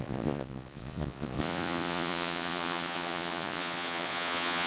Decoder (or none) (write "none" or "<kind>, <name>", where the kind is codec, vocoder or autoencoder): vocoder, Vocos